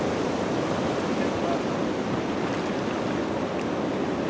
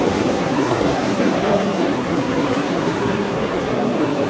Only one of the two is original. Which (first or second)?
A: first